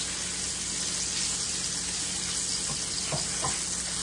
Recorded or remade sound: recorded